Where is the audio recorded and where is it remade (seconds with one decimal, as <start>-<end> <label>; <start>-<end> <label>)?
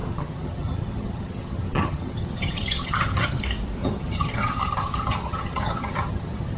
0.0-3.4 remade; 3.4-3.8 recorded; 3.8-6.6 remade